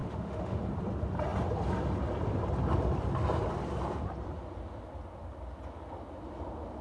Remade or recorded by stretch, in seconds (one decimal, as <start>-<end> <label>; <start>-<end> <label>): 0.0-0.6 remade; 0.6-6.8 recorded